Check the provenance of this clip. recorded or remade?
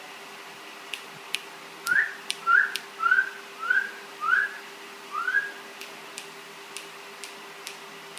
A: recorded